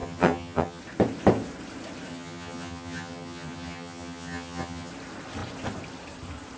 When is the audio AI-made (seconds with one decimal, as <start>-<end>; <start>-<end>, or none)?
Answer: 0.0-0.8; 2.1-4.9